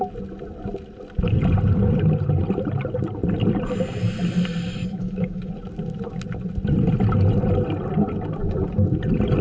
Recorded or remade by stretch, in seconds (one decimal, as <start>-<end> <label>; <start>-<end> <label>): 0.0-4.8 recorded; 4.8-5.5 remade; 5.5-9.4 recorded